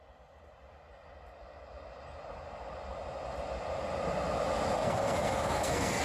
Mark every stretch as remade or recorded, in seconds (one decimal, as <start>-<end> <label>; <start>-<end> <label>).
0.0-4.8 recorded; 4.8-6.0 remade